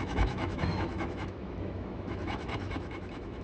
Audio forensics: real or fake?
fake